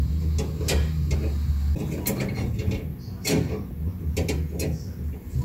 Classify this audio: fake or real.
real